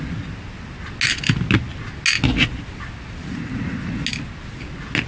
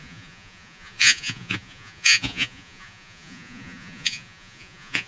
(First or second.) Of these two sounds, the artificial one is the second